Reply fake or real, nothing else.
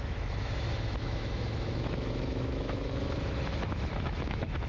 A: fake